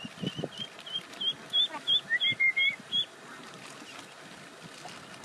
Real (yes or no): yes